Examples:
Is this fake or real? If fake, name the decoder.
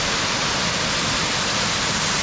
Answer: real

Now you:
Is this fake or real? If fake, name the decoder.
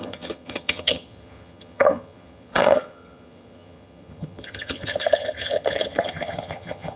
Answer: fake, vocoder, HiFi-GAN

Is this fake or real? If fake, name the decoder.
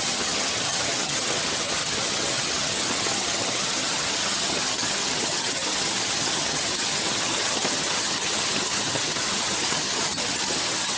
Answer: fake, vocoder, HiFi-GAN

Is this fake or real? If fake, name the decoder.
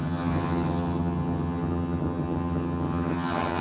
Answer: fake, vocoder, HiFi-GAN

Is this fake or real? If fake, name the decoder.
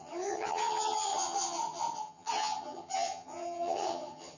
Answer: fake, vocoder, HiFi-GAN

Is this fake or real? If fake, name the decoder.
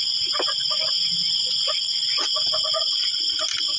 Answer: real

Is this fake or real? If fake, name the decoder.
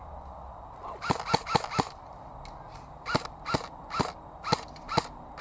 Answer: real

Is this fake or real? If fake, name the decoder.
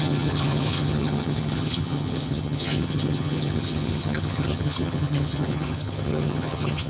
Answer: fake, vocoder, HiFi-GAN